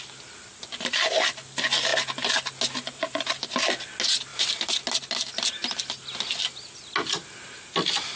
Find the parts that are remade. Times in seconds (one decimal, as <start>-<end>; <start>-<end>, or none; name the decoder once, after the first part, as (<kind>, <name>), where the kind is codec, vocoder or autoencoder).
4.3-4.8 (vocoder, BigVGAN v2)